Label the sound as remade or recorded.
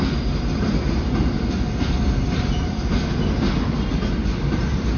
recorded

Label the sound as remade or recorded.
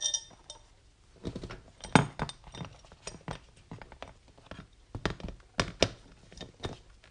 recorded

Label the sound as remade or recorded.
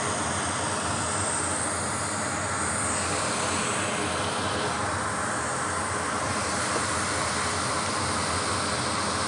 recorded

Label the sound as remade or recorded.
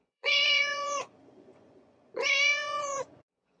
remade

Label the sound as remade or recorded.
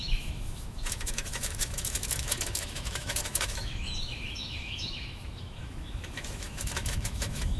remade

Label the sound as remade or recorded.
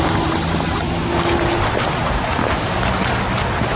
recorded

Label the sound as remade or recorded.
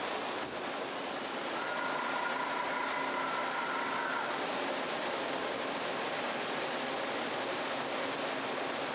recorded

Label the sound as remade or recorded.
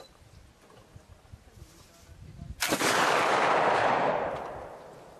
recorded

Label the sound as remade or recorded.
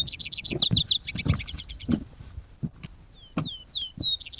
recorded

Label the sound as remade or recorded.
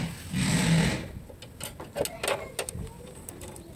recorded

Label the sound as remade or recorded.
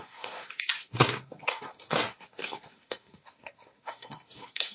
remade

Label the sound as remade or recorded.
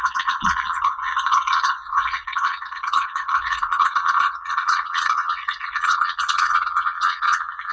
remade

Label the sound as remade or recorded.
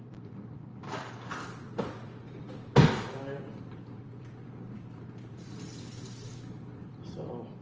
remade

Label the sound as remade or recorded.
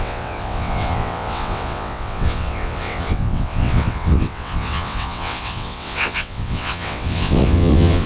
remade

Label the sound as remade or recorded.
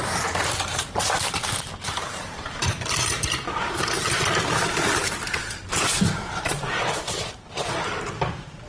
remade